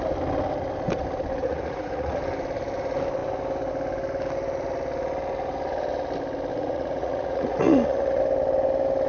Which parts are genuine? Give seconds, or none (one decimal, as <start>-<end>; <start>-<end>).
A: 0.0-1.4; 2.2-6.5; 8.2-9.1